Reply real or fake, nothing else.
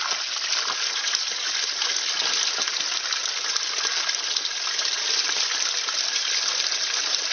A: real